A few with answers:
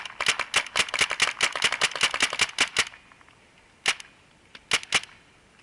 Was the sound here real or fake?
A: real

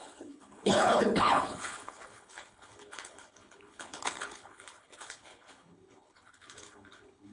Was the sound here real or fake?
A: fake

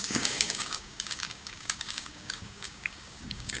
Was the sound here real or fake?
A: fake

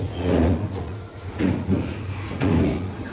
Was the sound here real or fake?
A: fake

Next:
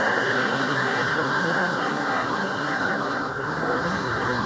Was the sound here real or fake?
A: fake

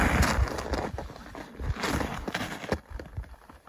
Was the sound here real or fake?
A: real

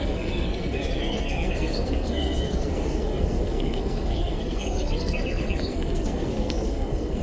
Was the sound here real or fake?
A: fake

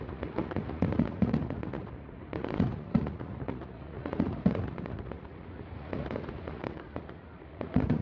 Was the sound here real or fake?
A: fake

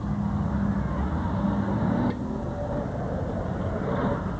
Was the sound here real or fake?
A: real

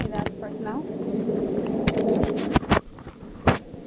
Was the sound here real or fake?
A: fake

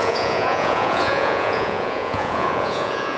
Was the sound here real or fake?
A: fake